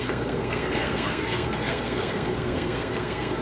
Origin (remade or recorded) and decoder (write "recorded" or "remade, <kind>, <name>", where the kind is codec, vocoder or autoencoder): remade, codec, SNAC